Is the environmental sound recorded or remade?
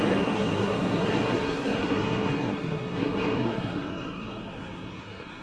remade